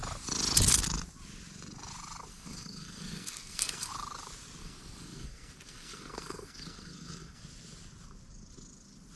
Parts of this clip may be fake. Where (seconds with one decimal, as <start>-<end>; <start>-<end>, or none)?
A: 2.3-3.9; 4.6-7.4